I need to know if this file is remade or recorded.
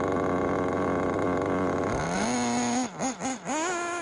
recorded